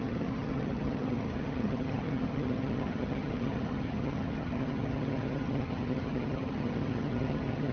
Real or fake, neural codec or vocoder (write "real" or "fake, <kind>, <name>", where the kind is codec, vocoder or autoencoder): fake, vocoder, HiFi-GAN